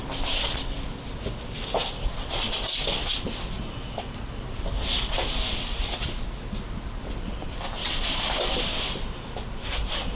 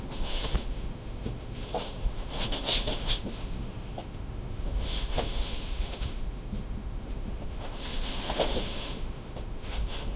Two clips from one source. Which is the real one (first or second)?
first